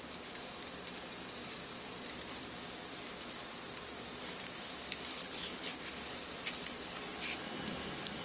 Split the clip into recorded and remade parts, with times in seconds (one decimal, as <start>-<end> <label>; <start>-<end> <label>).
0.0-5.1 recorded; 5.1-5.8 remade; 5.8-8.2 recorded